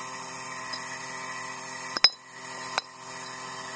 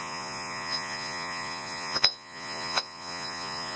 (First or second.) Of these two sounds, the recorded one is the first